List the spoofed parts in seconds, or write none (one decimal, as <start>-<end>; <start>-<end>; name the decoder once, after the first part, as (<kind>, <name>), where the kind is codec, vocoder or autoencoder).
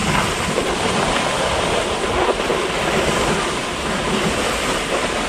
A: none